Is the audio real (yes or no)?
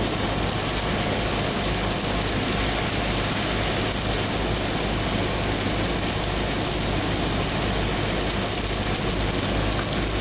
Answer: yes